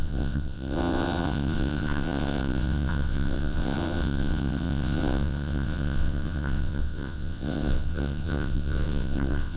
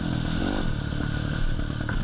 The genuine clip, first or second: second